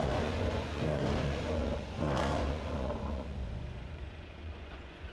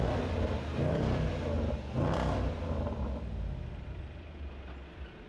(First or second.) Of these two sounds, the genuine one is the second